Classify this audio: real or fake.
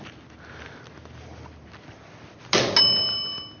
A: real